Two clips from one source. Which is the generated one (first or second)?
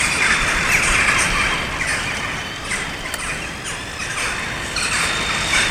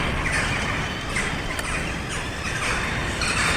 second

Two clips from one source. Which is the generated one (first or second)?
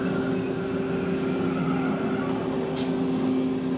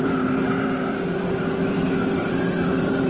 second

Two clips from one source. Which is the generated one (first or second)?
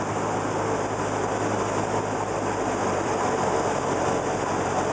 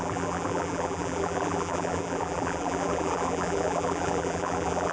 second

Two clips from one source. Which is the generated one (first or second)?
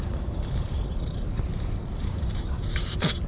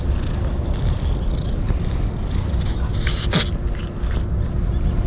first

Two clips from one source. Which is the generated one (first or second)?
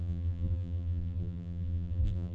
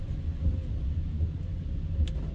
first